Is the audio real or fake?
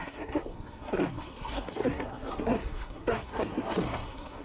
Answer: fake